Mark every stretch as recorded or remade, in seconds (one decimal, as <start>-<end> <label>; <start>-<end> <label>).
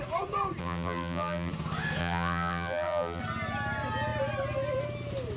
0.0-0.6 recorded; 0.6-1.5 remade; 1.5-2.0 recorded; 2.0-3.2 remade; 3.2-5.4 recorded